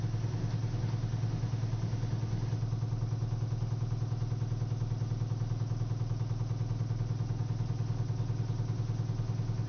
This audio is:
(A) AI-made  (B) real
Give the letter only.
B